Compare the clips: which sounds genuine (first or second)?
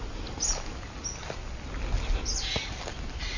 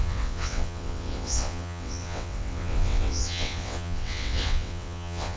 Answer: first